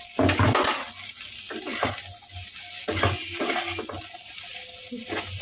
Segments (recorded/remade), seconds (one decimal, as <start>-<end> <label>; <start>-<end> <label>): 0.0-5.4 recorded